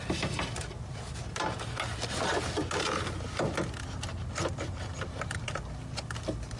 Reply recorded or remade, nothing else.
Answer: recorded